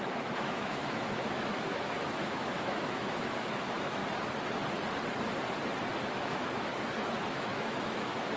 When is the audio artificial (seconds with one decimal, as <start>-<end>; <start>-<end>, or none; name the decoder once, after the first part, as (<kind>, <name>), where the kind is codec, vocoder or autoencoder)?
0.0-4.0 (autoencoder, DAC-VAE); 6.0-6.7; 7.3-8.4